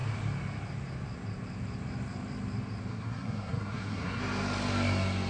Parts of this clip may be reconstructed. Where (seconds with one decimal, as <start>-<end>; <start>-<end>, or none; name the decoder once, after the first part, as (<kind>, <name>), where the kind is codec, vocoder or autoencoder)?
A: 2.9-4.2 (codec, SNAC)